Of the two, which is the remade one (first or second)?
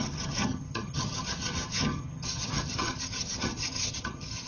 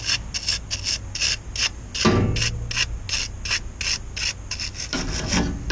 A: first